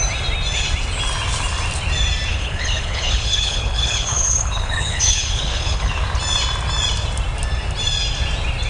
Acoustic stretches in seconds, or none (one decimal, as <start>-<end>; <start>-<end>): 0.0-2.3; 5.9-8.7